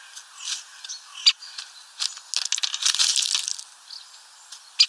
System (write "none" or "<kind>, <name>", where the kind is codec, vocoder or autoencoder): none